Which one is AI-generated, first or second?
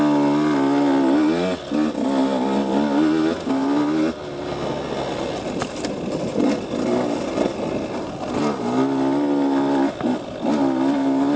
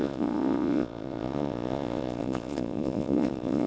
second